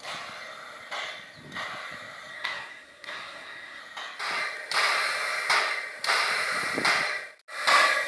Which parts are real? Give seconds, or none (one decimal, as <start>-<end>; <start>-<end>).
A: 0.0-2.3; 3.8-8.1